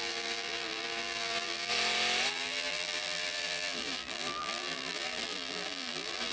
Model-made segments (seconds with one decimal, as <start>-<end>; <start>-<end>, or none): 0.0-1.7; 2.3-6.3